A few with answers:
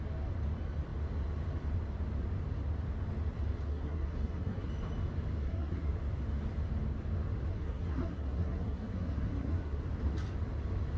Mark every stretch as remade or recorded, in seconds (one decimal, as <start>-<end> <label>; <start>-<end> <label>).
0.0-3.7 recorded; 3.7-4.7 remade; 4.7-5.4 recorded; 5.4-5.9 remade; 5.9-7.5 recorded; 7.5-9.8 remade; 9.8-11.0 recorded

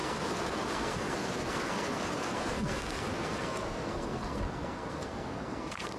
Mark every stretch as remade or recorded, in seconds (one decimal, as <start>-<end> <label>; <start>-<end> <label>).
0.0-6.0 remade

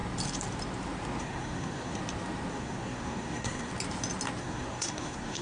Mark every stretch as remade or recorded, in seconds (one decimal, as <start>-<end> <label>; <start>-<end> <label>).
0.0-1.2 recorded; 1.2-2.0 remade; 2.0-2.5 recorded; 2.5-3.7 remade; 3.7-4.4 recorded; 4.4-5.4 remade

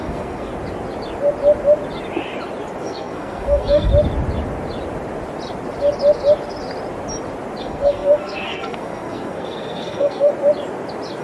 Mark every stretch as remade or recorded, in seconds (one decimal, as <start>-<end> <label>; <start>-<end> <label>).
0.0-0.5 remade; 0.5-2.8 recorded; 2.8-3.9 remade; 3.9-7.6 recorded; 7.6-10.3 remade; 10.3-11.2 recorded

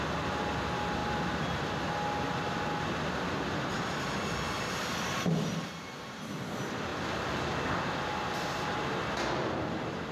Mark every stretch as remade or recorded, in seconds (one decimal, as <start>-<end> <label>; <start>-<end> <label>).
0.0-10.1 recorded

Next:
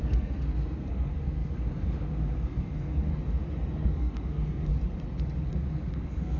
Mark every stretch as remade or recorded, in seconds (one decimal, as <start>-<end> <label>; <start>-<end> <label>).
0.0-3.1 remade; 3.1-3.7 recorded; 3.7-4.7 remade; 4.7-5.4 recorded; 5.4-6.4 remade

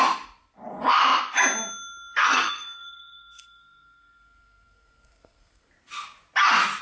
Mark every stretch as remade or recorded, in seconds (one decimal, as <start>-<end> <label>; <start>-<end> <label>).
0.0-2.2 recorded; 2.2-5.7 remade; 5.7-6.8 recorded

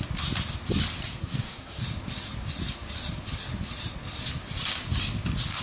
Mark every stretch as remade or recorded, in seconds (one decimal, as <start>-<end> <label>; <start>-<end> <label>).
0.0-1.1 recorded; 1.1-1.8 remade; 1.8-5.6 recorded